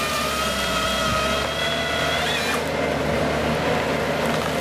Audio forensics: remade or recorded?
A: recorded